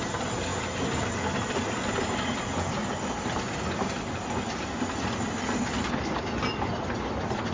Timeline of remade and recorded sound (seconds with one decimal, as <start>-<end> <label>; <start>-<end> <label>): 0.0-7.5 recorded